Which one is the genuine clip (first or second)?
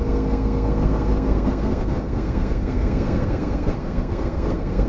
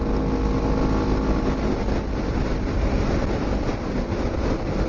second